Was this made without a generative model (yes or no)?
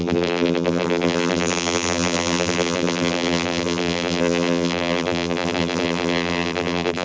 no